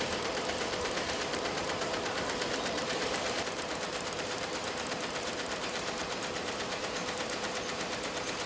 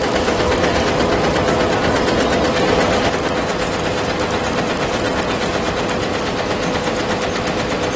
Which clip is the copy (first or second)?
first